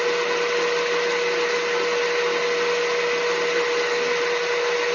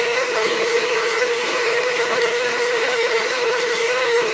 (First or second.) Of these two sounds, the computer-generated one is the second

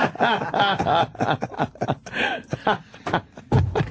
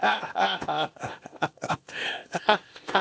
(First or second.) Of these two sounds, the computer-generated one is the second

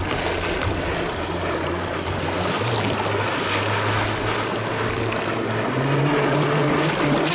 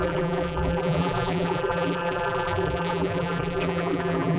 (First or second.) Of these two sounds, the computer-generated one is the second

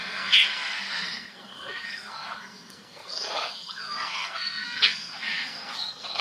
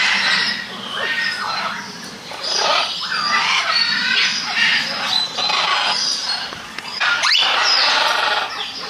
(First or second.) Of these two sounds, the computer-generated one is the first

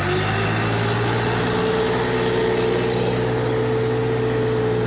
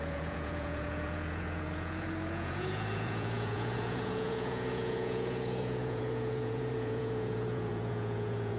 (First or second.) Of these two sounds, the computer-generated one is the second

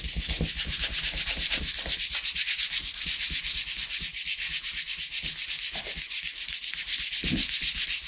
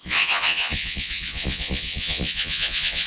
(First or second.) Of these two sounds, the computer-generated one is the second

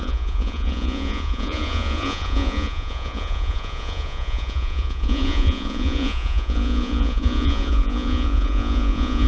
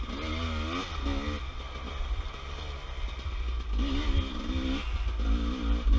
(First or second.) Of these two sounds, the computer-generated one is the first